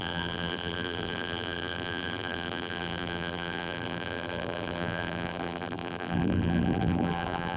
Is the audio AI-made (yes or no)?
yes